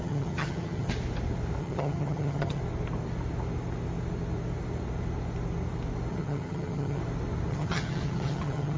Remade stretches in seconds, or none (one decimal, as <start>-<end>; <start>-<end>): 0.0-0.9; 1.6-2.6; 6.1-7.0; 7.5-8.8